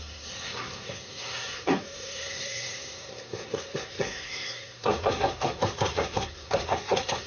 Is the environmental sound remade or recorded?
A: remade